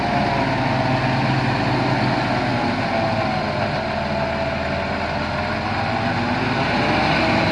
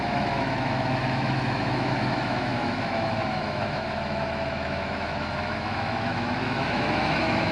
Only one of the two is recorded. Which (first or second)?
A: first